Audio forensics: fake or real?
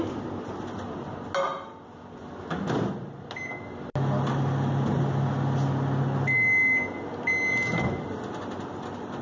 real